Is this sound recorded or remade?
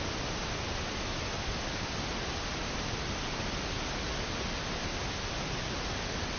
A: recorded